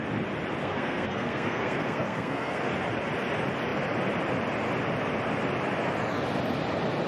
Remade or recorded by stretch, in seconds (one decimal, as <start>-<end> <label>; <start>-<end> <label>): 0.0-0.6 recorded; 0.6-2.6 remade; 2.6-7.1 recorded